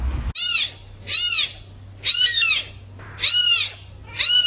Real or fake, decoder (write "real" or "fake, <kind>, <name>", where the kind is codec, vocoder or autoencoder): real